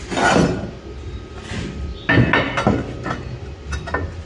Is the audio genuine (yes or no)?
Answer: yes